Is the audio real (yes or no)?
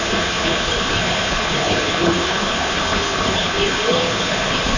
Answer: no